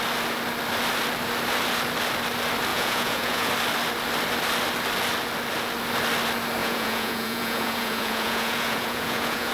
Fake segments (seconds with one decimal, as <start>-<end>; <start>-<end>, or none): 2.7-3.5; 6.6-9.5